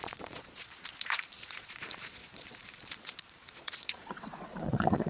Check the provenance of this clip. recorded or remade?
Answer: remade